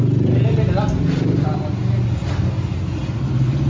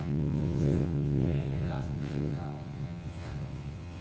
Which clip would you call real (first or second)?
first